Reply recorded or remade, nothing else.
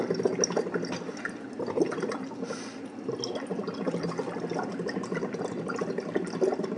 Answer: recorded